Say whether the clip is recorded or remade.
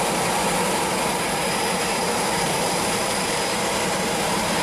remade